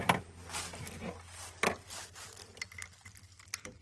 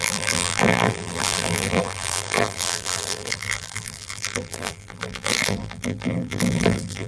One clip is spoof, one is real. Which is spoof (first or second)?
second